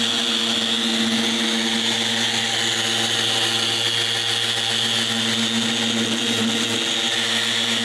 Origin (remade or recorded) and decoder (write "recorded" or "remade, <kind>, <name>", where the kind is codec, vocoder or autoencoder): recorded